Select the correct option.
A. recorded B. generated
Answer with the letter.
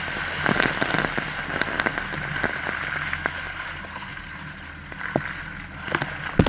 A